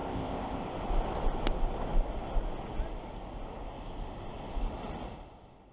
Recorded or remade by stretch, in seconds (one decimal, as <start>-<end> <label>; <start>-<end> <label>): 0.0-0.6 remade; 0.6-5.7 recorded